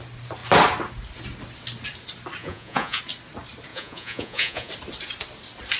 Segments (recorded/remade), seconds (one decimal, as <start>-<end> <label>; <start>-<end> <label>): 0.0-2.4 recorded; 2.4-3.0 remade; 3.0-3.7 recorded; 3.7-4.7 remade; 4.7-5.8 recorded